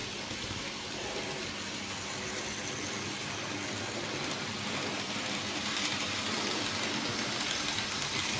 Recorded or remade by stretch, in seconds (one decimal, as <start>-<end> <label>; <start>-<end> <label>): 0.0-8.4 recorded